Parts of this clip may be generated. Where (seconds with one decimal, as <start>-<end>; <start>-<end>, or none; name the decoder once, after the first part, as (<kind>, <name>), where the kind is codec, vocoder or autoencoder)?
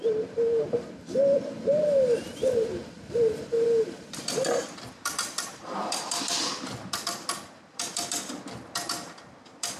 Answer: 0.0-9.8 (vocoder, BigVGAN v2)